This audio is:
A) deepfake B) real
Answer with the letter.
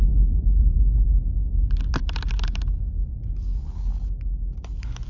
B